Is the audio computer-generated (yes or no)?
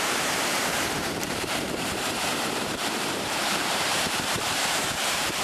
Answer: yes